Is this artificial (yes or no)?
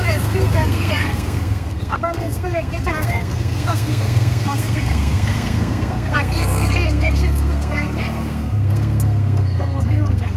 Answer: yes